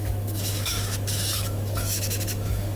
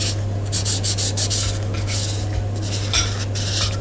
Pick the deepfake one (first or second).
first